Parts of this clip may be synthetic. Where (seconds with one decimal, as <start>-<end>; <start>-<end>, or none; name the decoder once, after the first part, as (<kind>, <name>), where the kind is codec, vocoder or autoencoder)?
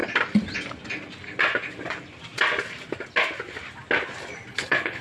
4.5-5.0 (codec, HILCodec)